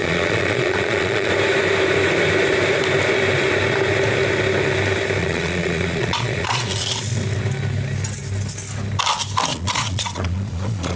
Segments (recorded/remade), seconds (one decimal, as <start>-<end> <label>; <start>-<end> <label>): 0.0-1.3 remade; 1.3-5.2 recorded; 5.2-6.9 remade; 6.9-9.5 recorded; 9.5-11.0 remade